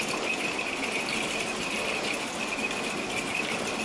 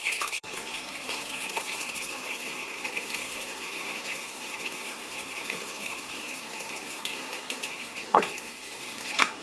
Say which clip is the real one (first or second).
first